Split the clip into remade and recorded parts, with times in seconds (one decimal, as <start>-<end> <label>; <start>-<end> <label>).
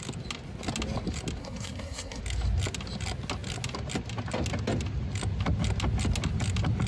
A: 0.0-1.4 recorded; 1.4-2.2 remade; 2.2-6.9 recorded